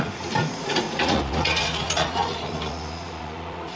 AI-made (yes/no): yes